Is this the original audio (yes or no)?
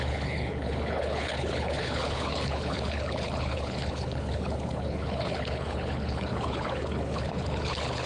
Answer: no